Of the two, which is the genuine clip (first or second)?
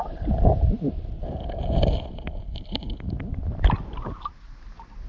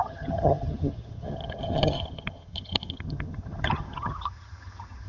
first